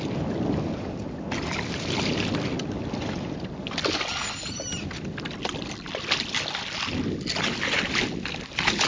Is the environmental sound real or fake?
real